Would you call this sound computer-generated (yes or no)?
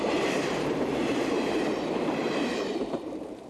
yes